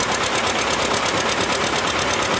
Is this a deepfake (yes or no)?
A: no